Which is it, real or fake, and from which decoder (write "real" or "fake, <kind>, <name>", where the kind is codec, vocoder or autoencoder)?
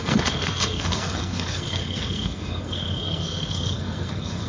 fake, codec, SNAC